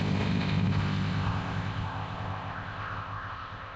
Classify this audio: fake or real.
fake